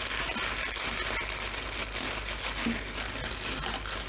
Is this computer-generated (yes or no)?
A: no